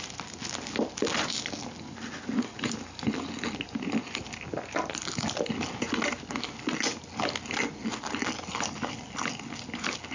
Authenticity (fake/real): real